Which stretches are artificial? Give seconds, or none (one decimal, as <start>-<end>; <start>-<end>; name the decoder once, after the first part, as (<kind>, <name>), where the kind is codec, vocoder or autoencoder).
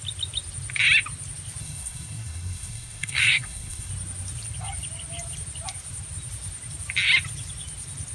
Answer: 1.6-3.9 (codec, SNAC)